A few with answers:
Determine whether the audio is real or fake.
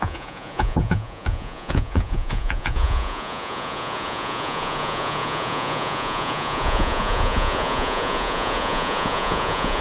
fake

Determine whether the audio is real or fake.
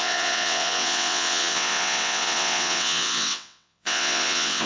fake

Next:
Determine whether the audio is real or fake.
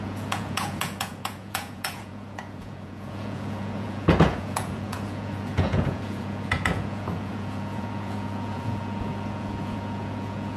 fake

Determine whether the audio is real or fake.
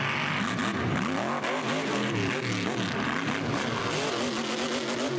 real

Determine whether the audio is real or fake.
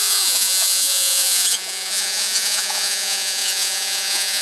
fake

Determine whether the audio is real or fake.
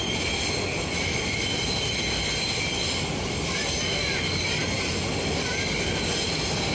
real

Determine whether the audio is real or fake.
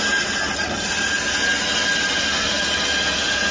real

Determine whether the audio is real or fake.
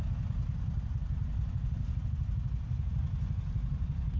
real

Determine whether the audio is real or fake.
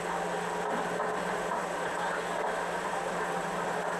real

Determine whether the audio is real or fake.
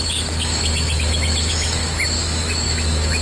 fake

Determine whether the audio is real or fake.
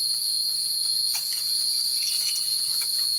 fake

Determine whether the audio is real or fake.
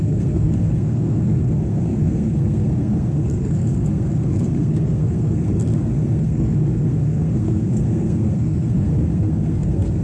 fake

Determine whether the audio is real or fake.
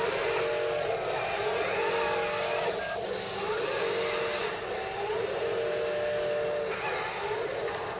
real